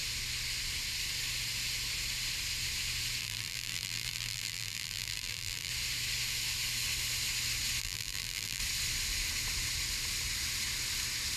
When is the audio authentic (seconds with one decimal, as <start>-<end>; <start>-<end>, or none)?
0.0-3.2; 5.7-7.8; 8.6-11.4